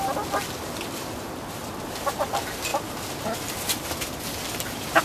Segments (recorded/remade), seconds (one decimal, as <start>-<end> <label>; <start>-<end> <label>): 0.0-5.0 recorded